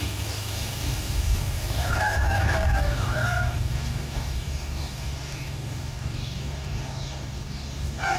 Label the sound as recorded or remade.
remade